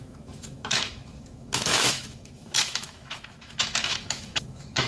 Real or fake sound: fake